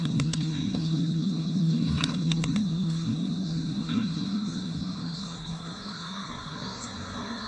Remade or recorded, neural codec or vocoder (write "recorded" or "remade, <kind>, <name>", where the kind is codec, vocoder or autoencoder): remade, codec, SNAC